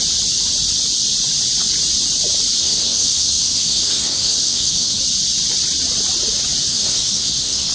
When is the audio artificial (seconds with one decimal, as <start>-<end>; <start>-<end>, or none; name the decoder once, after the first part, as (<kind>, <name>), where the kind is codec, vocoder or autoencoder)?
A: 2.6-5.0 (codec, SNAC); 6.7-7.7